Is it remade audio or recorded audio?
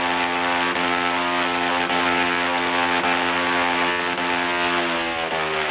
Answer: recorded